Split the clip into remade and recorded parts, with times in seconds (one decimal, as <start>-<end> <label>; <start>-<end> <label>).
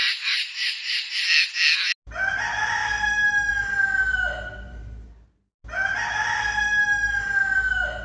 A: 0.0-1.1 remade; 1.1-8.0 recorded